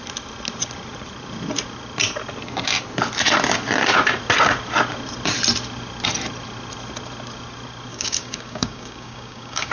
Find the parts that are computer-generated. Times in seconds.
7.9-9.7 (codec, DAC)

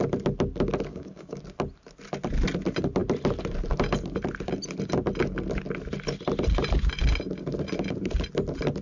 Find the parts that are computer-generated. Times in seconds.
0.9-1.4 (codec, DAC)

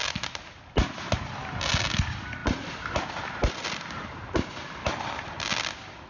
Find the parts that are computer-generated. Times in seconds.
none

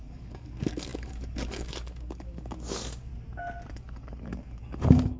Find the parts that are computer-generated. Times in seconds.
0.0-3.1 (codec, DAC); 3.7-5.2